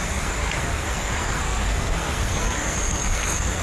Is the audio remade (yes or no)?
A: yes